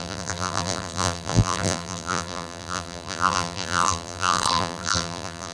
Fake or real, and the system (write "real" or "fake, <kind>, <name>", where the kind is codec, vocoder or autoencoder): fake, vocoder, BigVGAN v2